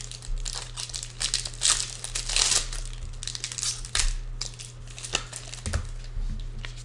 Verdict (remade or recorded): recorded